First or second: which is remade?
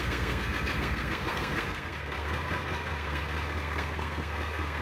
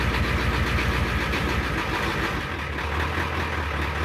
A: first